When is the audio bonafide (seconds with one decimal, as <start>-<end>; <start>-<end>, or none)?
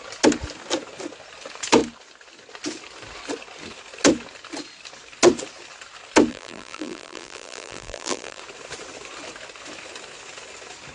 0.0-6.3; 8.4-10.9